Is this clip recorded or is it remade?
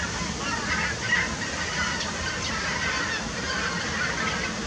recorded